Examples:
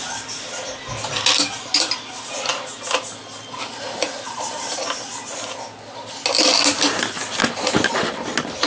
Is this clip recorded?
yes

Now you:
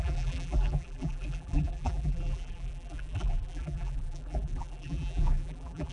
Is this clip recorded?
no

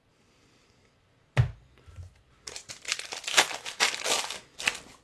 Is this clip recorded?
yes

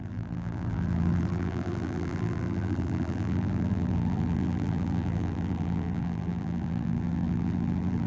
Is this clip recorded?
no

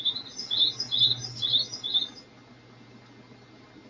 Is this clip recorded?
yes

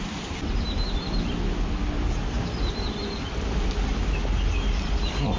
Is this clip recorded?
yes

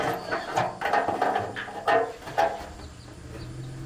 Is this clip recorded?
yes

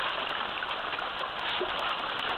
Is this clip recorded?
yes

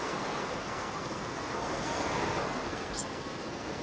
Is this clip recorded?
no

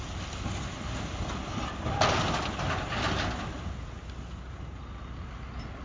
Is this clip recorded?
yes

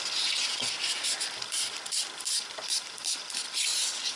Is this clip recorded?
yes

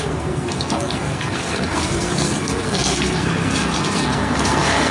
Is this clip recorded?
no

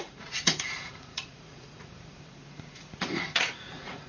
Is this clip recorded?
no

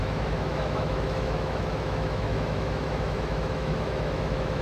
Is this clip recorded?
no